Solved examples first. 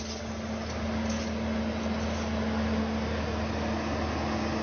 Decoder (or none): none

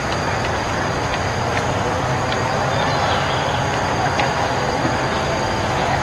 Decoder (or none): vocoder, BigVGAN v2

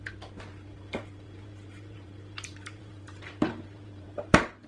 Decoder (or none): vocoder, BigVGAN v2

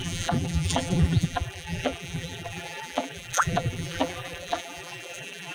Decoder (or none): vocoder, BigVGAN v2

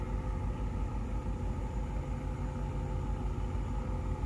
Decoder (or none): none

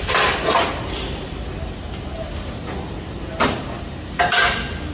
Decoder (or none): none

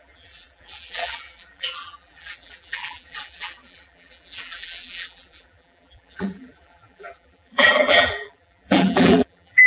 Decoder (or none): vocoder, BigVGAN v2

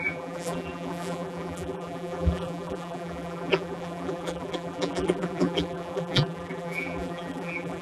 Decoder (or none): vocoder, BigVGAN v2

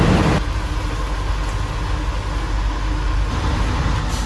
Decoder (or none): none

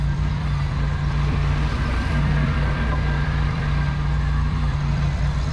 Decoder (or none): vocoder, BigVGAN v2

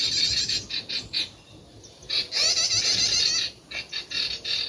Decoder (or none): none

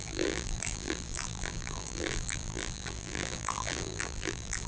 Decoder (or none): vocoder, BigVGAN v2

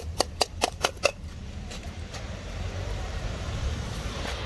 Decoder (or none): vocoder, BigVGAN v2